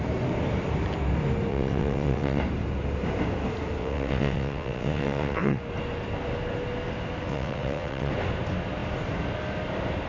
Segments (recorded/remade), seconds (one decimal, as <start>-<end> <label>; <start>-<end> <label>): 0.0-1.5 recorded; 1.5-2.4 remade; 2.4-3.8 recorded; 3.8-5.6 remade; 5.6-7.3 recorded; 7.3-8.1 remade; 8.1-10.1 recorded